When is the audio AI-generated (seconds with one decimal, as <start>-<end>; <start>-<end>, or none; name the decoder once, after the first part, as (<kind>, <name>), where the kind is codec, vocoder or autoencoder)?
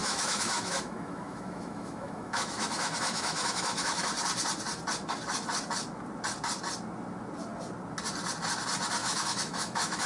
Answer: 0.0-4.1 (autoencoder, DAC-VAE); 9.0-10.1